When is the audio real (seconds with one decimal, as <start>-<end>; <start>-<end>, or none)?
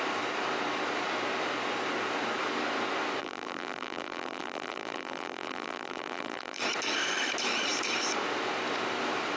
0.0-3.2; 6.6-9.4